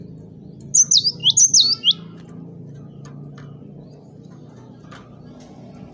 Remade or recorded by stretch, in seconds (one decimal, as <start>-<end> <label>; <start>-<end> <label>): 0.0-5.9 recorded